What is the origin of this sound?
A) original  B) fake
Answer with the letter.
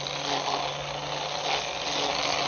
A